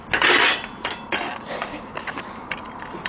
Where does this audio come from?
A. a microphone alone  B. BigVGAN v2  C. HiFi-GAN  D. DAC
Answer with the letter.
A